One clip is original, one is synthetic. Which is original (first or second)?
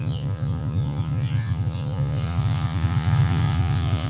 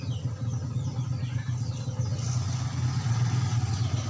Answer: second